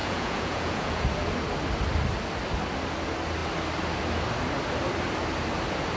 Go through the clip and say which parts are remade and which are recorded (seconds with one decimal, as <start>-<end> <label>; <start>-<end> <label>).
0.0-1.0 remade; 1.0-6.0 recorded